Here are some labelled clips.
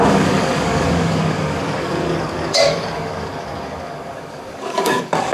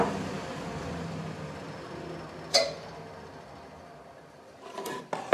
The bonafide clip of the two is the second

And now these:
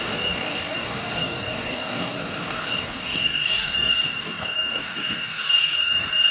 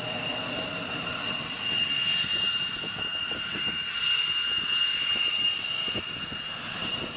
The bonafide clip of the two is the second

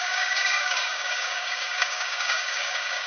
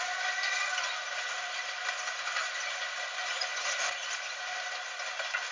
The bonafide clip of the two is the second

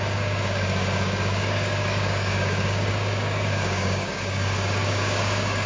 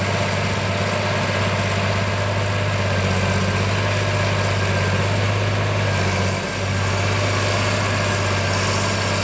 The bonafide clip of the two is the second